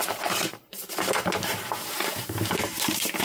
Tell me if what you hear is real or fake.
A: fake